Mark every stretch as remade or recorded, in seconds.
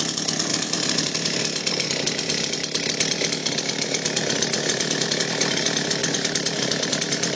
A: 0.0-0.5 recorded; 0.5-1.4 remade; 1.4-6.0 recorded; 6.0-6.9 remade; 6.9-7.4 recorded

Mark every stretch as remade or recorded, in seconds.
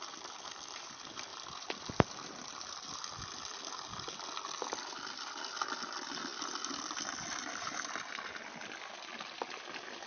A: 0.0-10.1 recorded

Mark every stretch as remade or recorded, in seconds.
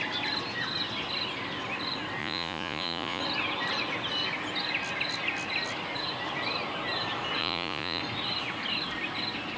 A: 0.0-2.2 recorded; 2.2-3.2 remade; 3.2-7.4 recorded; 7.4-8.0 remade; 8.0-9.6 recorded